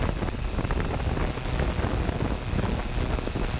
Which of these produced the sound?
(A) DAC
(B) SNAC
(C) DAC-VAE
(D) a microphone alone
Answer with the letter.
D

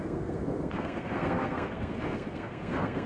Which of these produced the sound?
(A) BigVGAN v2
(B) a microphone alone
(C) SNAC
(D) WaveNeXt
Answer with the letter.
C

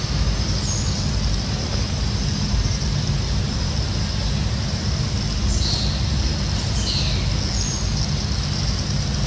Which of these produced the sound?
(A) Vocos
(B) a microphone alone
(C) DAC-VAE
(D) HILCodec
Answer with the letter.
B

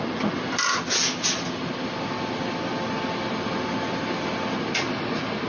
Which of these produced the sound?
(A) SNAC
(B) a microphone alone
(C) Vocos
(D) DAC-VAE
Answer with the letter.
B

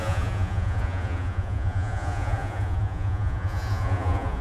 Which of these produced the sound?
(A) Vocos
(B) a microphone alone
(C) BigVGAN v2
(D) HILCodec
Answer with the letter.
A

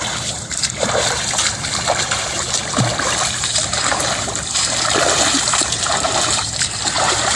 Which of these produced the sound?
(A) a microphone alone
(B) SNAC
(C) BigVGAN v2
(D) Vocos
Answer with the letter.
C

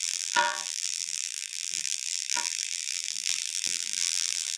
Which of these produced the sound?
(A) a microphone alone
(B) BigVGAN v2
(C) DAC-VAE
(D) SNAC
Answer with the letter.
B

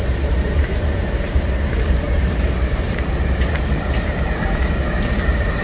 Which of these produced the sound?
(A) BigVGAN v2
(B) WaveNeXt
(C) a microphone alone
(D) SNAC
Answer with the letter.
A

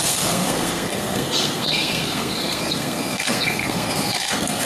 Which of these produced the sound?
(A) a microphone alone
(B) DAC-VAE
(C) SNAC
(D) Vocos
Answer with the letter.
C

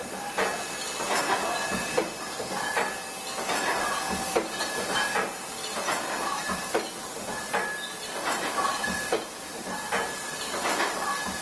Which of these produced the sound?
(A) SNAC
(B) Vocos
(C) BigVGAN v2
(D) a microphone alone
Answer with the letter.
D